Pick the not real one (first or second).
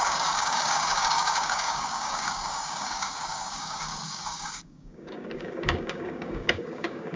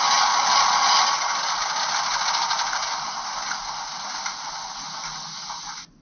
first